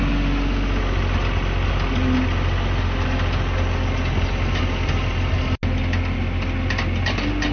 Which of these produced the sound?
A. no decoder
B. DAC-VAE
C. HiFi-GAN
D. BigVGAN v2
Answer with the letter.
A